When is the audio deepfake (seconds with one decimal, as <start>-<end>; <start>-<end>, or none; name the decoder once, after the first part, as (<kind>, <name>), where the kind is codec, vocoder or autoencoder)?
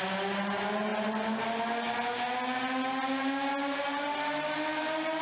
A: none